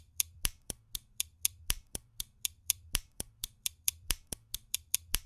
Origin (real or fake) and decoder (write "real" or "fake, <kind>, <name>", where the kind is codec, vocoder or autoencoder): fake, vocoder, BigVGAN v2